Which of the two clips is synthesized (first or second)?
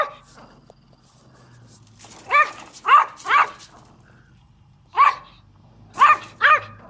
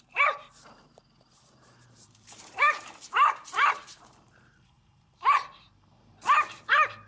second